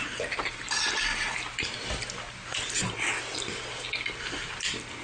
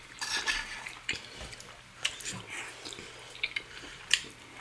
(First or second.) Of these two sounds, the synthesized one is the second